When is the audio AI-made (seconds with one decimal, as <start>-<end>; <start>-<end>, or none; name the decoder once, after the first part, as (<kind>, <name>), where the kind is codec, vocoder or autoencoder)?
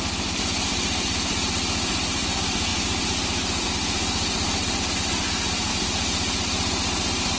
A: none